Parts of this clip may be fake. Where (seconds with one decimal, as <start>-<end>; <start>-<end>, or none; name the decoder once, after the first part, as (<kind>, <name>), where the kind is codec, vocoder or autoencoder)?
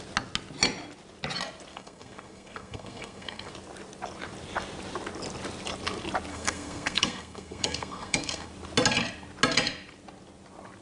1.7-3.5 (codec, SNAC); 6.3-8.5